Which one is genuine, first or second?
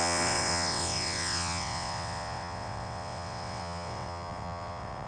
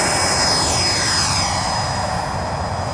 second